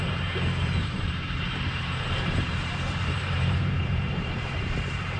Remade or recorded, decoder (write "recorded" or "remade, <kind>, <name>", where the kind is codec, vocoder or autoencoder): remade, vocoder, BigVGAN v2